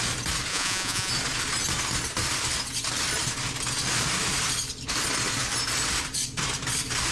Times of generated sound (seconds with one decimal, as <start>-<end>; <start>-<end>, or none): 0.5-1.1